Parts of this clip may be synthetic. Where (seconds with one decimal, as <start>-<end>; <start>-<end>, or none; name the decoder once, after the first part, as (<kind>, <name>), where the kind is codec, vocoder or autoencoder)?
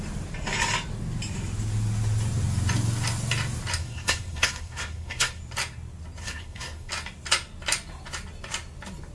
3.8-5.4 (codec, SNAC); 6.2-6.9